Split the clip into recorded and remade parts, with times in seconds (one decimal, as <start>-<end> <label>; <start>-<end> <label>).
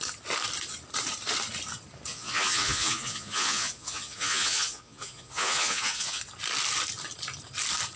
0.0-2.1 recorded; 2.1-6.2 remade; 6.2-8.0 recorded